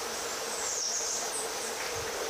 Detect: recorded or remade recorded